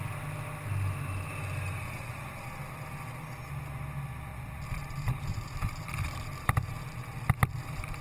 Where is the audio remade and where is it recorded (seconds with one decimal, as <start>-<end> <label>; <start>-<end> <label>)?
0.0-4.3 recorded; 4.3-7.2 remade; 7.2-8.0 recorded